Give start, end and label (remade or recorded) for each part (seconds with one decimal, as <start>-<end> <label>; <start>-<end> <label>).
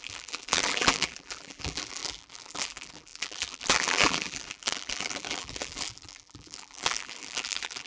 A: 0.0-7.9 remade